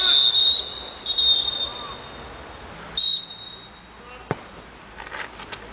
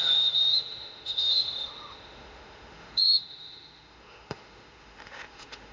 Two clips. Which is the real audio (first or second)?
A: first